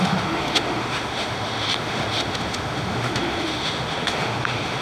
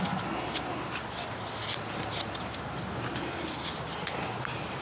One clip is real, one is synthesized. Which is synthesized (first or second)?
first